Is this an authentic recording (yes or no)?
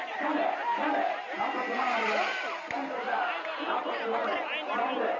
yes